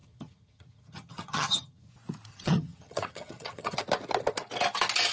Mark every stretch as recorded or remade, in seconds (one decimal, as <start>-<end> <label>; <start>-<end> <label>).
0.0-1.9 remade; 1.9-2.3 recorded; 2.3-3.8 remade; 3.8-5.1 recorded